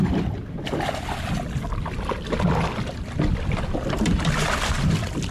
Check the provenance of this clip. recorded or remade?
recorded